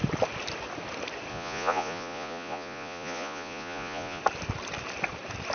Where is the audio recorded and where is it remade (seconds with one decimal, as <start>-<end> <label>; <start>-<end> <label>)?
0.0-1.3 recorded; 1.3-4.2 remade; 4.2-5.5 recorded